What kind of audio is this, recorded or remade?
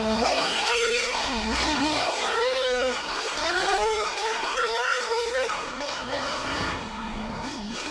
remade